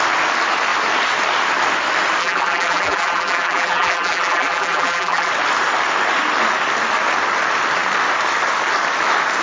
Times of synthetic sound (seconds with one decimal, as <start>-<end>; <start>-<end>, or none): 2.2-5.3